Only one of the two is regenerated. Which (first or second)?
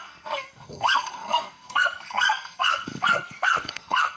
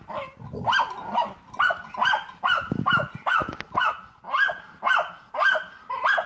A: first